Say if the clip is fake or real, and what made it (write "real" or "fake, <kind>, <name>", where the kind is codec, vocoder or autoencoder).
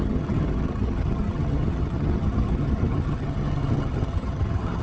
fake, vocoder, HiFi-GAN